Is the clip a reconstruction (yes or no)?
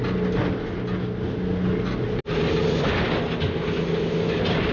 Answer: no